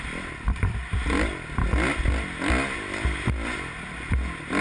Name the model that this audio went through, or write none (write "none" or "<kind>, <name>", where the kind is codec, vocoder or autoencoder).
none